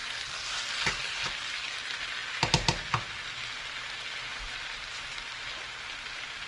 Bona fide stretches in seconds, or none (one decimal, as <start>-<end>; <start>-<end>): 0.0-6.5